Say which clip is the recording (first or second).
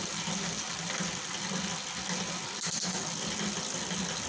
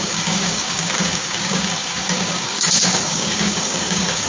first